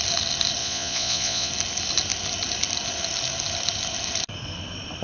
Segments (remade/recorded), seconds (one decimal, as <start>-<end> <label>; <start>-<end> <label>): 0.0-0.6 recorded; 0.6-1.5 remade; 1.5-5.0 recorded